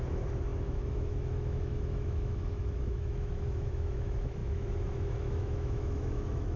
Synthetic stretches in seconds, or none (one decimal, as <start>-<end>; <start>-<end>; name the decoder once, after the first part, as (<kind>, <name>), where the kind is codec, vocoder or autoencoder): 0.0-6.6 (autoencoder, DAC-VAE)